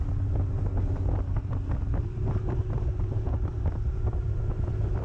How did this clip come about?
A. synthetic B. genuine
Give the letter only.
A